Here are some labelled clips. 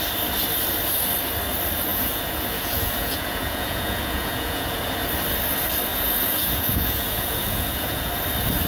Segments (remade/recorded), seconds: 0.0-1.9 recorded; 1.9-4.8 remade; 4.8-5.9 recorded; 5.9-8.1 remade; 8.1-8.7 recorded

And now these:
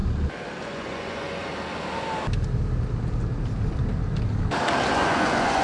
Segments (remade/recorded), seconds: 0.0-0.6 recorded; 0.6-1.5 remade; 1.5-4.9 recorded; 4.9-5.6 remade